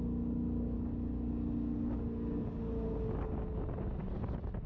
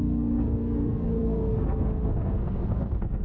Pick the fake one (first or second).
second